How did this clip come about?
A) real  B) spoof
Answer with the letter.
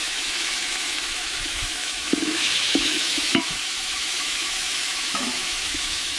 B